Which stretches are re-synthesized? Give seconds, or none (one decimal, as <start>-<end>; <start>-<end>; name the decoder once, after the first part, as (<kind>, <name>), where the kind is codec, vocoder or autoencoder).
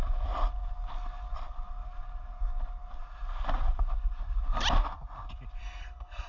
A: 5.6-6.3 (codec, SNAC)